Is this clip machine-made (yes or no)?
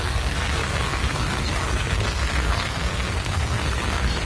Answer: yes